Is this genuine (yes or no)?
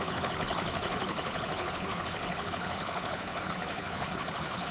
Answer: no